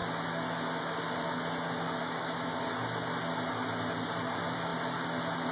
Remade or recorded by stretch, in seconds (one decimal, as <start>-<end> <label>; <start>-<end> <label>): 0.0-2.0 recorded; 2.0-2.5 remade; 2.5-5.5 recorded